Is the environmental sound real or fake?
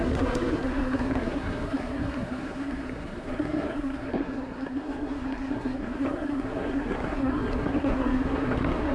fake